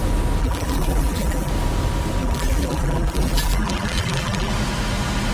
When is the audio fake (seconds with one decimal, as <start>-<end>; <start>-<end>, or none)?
0.4-1.5; 2.2-4.5